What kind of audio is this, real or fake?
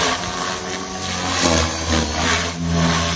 real